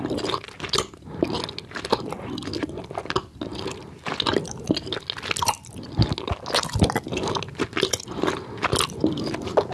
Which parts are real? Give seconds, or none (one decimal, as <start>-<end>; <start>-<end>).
0.0-9.7